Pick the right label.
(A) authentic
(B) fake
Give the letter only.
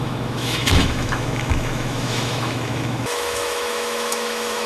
B